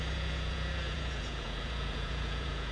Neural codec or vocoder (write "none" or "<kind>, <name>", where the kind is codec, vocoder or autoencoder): vocoder, Vocos